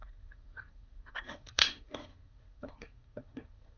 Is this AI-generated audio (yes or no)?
yes